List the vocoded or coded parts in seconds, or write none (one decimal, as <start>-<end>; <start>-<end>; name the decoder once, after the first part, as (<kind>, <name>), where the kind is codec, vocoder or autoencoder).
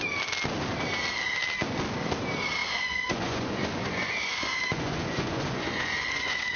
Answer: 2.6-6.6 (vocoder, Vocos)